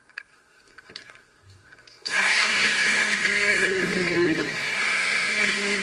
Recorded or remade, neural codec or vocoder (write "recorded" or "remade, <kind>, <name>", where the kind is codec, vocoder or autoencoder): remade, codec, SNAC